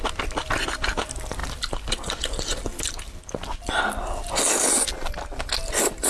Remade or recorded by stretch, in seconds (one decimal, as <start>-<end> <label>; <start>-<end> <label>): 0.0-6.1 recorded